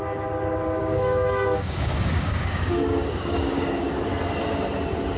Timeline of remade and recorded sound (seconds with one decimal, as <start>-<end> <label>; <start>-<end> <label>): 0.0-0.8 recorded; 0.8-3.9 remade; 3.9-5.2 recorded